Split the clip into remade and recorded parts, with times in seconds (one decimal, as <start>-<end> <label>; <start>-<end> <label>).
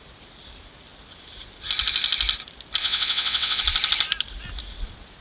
0.0-2.8 recorded; 2.8-3.6 remade; 3.6-5.2 recorded